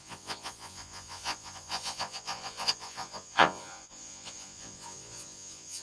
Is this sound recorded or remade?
remade